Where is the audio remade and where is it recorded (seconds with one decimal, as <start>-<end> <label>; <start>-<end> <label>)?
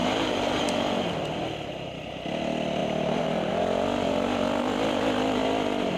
0.0-0.6 remade; 0.6-2.8 recorded; 2.8-3.5 remade; 3.5-6.0 recorded